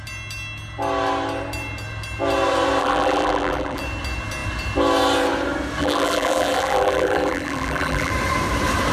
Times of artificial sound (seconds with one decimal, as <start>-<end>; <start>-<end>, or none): 2.8-3.8; 5.8-8.1